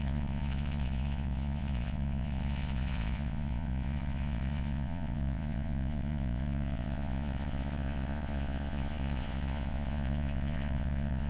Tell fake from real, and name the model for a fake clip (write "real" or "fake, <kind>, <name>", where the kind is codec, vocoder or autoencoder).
fake, vocoder, Vocos